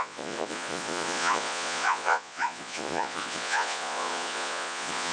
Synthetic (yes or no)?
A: yes